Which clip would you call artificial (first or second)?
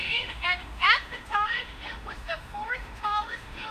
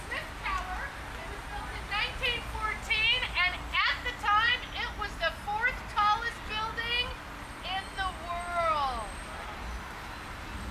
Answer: first